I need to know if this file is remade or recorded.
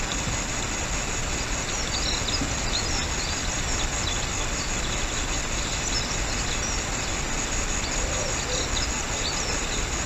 recorded